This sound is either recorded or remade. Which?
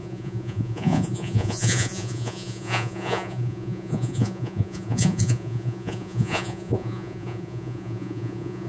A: remade